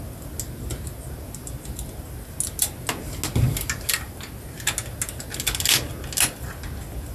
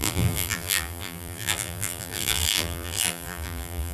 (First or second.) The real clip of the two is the first